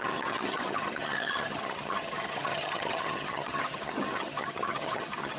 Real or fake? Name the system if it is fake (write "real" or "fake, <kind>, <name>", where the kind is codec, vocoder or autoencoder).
fake, vocoder, HiFi-GAN